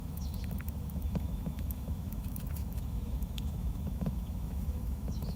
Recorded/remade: remade